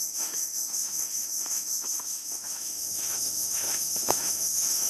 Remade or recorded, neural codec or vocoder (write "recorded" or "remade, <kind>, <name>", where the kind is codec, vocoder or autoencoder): remade, autoencoder, DAC-VAE